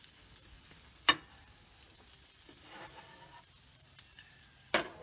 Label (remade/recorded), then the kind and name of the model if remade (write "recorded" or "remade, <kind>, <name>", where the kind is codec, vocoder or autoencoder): recorded